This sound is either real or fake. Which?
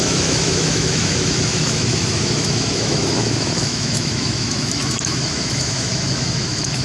fake